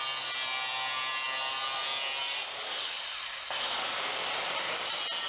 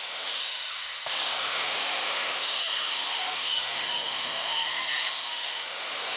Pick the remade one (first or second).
second